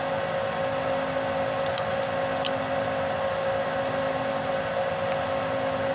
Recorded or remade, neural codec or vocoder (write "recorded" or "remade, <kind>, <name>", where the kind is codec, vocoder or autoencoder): recorded